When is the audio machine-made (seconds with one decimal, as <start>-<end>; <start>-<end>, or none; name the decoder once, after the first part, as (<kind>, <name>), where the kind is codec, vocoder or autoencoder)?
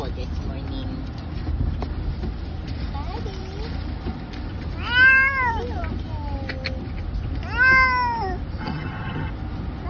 8.6-9.3 (vocoder, HiFi-GAN)